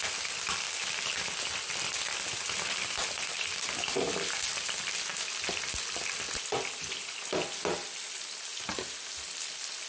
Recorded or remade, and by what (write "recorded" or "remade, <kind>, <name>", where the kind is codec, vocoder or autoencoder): recorded